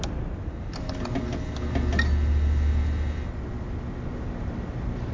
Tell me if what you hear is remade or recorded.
recorded